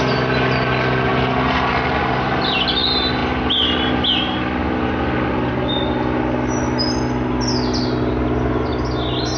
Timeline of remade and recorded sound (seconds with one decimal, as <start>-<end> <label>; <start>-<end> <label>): 0.0-9.4 recorded